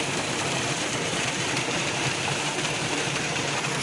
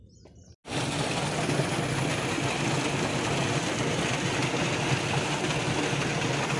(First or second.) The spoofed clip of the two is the first